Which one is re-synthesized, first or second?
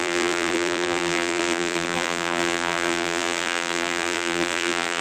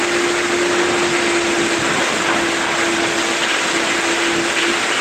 first